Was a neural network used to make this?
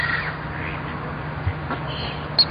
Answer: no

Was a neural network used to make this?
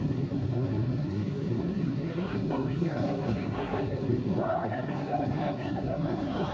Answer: yes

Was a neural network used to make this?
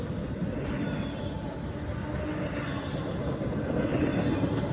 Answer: no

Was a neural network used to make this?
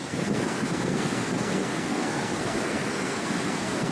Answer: yes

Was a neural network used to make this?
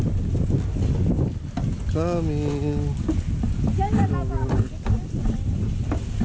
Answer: no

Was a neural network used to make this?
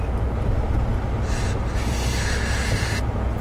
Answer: no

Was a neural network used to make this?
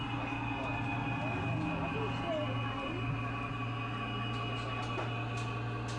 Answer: no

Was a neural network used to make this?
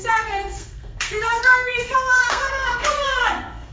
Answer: yes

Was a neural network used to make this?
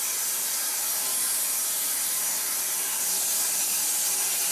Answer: no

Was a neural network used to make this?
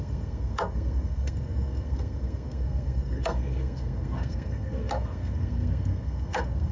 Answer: yes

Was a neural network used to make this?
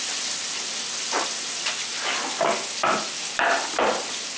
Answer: no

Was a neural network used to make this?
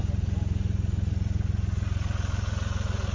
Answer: no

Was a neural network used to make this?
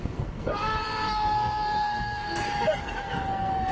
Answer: yes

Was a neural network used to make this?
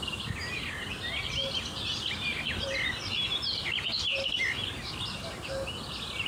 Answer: no